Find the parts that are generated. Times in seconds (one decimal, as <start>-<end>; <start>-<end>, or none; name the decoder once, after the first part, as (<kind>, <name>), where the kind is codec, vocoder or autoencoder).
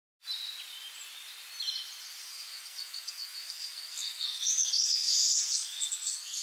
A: 2.2-6.4 (codec, SNAC)